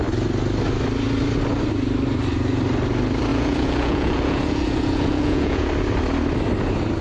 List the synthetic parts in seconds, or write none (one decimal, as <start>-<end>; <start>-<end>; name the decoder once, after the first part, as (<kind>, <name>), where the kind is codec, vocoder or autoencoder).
3.3-5.7 (vocoder, Vocos)